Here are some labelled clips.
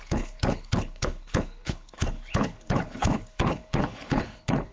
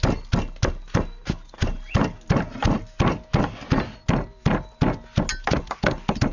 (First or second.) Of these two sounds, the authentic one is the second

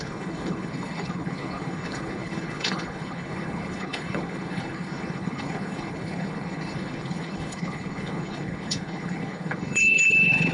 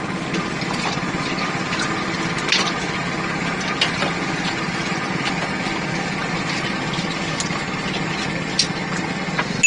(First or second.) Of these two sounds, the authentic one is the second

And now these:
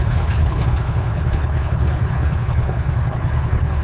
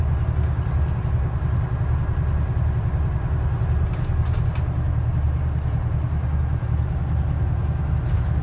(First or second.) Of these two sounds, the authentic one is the second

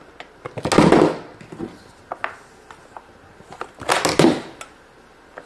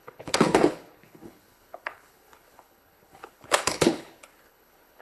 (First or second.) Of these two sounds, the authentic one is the first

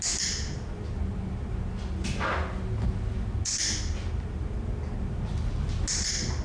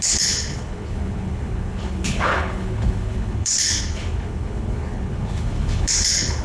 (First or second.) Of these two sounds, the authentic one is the first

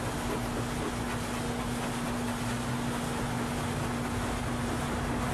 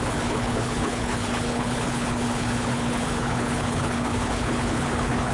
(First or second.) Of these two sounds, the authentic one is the first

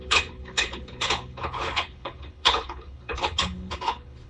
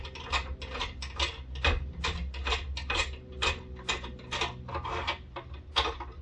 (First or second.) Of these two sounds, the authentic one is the second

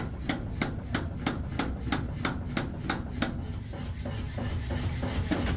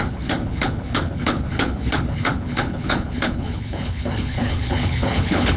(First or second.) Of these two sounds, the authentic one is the first